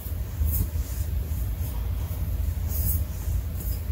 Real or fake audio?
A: real